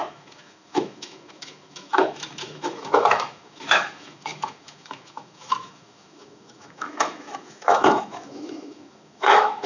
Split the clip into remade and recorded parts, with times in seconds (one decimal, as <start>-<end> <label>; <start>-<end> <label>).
0.0-9.7 remade